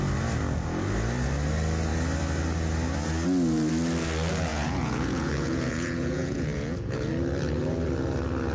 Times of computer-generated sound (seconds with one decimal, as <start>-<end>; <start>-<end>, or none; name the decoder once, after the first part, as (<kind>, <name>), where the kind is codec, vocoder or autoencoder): 4.5-7.1 (vocoder, Vocos)